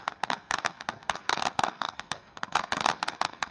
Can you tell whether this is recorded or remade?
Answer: remade